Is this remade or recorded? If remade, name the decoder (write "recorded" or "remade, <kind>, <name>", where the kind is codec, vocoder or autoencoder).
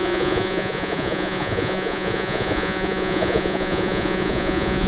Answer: remade, vocoder, Vocos